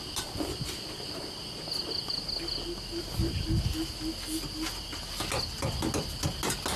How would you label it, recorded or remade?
recorded